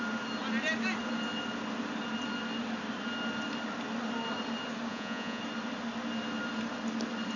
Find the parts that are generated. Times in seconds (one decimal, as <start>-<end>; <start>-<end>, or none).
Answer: 4.9-5.4